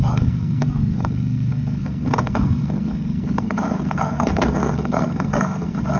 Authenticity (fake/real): fake